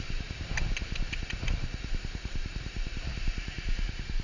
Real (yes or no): no